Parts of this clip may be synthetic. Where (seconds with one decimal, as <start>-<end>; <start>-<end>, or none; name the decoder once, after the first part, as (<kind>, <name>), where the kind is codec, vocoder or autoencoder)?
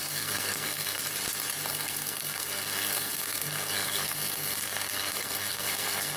0.0-1.0 (codec, SNAC); 1.7-6.2